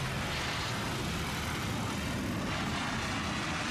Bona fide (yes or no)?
yes